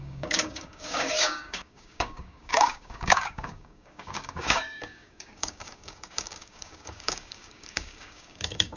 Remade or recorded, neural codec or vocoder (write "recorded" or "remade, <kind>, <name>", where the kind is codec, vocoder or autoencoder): remade, codec, DAC